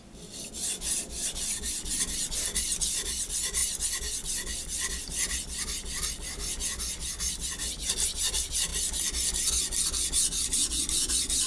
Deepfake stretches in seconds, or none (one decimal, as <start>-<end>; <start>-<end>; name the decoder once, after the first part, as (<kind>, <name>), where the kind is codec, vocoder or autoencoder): none